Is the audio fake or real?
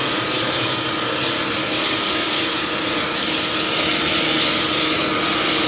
real